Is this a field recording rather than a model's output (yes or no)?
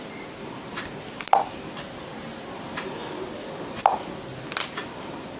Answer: yes